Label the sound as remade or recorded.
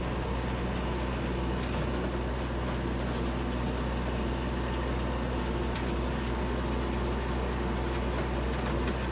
recorded